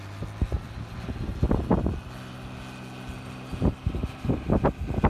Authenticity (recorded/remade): recorded